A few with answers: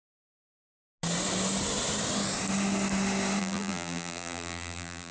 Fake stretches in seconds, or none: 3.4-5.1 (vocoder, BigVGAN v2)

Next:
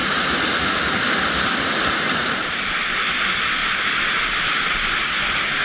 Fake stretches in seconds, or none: 0.0-5.6 (vocoder, BigVGAN v2)